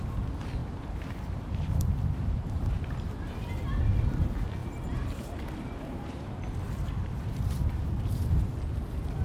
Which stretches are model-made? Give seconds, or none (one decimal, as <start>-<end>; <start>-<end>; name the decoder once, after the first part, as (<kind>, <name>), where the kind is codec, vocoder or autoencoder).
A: 0.6-2.8 (vocoder, BigVGAN v2); 4.6-8.5